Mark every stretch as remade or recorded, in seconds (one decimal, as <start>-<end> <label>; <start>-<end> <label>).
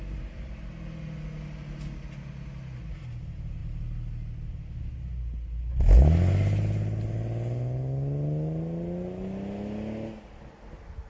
0.0-11.1 recorded